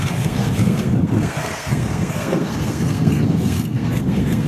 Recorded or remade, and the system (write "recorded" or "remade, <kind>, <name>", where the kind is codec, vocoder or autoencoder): remade, codec, SNAC